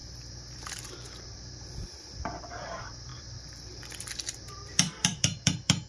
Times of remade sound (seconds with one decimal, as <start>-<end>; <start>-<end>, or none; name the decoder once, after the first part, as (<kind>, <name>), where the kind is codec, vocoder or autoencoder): 0.0-5.9 (vocoder, BigVGAN v2)